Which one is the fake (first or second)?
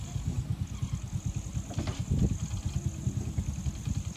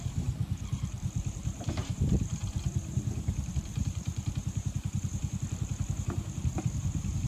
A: second